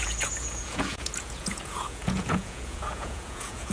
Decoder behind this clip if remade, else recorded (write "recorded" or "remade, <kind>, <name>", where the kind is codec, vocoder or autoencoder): remade, vocoder, Vocos